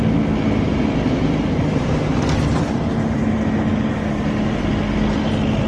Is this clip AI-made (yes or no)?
no